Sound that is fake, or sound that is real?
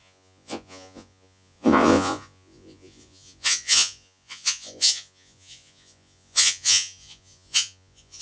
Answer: fake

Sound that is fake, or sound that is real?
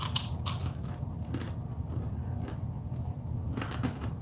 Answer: real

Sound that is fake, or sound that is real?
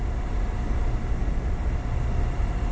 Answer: real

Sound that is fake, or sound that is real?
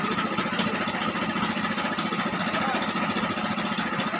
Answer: real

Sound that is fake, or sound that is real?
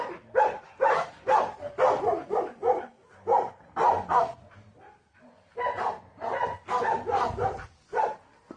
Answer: real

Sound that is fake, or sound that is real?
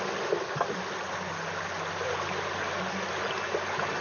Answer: real